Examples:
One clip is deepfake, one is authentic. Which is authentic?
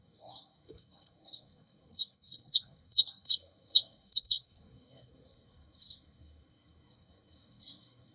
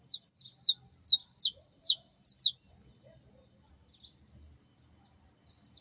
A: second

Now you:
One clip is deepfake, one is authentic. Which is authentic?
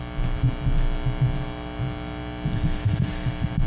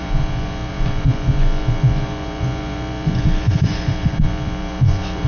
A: first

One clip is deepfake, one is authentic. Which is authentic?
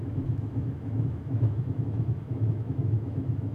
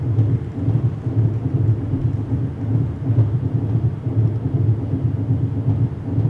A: second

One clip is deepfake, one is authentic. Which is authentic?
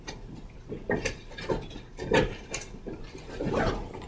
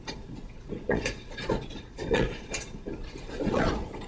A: first